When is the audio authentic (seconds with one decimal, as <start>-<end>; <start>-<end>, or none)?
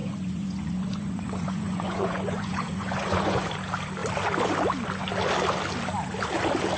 3.5-6.8